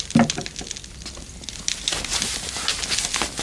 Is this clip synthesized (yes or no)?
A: no